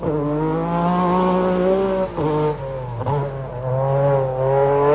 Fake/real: real